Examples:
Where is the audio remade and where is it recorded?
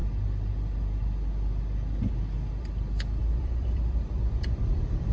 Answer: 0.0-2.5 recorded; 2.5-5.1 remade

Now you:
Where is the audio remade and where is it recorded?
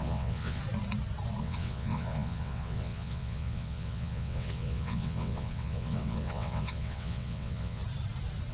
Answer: 0.0-0.6 remade; 0.6-1.4 recorded; 1.4-7.8 remade; 7.8-8.5 recorded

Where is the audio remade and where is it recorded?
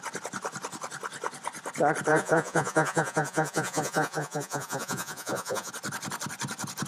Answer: 0.0-2.1 recorded; 2.1-5.7 remade; 5.7-6.9 recorded